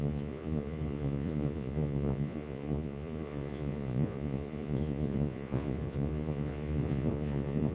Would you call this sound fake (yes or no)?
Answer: yes